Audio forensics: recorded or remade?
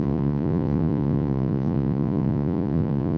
remade